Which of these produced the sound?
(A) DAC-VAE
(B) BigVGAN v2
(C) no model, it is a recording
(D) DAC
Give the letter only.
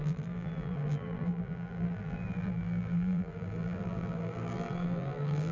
B